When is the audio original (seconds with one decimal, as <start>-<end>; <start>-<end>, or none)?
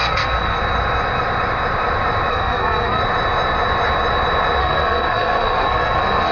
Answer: 0.6-2.3; 3.0-4.6